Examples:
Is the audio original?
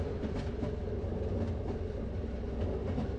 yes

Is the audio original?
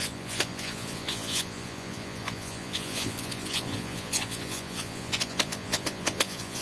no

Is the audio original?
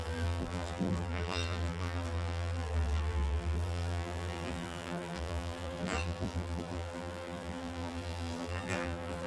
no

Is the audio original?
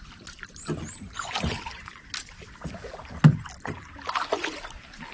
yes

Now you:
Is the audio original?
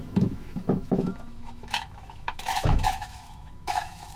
no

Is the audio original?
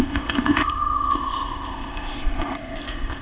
no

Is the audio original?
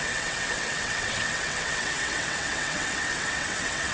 no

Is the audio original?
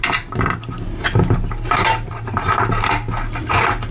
yes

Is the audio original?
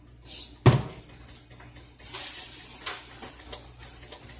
yes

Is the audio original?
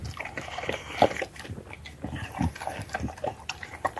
yes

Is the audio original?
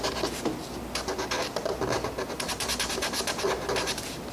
yes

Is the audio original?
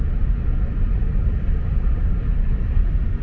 yes